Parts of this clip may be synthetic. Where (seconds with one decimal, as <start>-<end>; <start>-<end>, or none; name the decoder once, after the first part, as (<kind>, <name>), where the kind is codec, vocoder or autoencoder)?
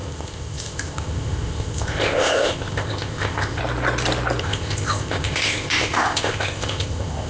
0.0-3.6 (codec, ZipCodec); 4.4-7.3